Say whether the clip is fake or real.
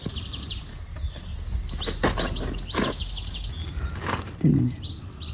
real